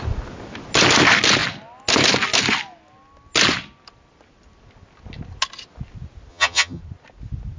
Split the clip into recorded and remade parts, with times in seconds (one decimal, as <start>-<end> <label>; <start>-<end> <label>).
0.0-6.3 recorded; 6.3-6.8 remade; 6.8-7.6 recorded